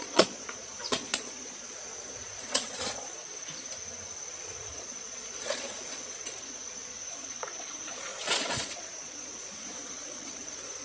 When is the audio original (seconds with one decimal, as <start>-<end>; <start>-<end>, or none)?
3.2-4.4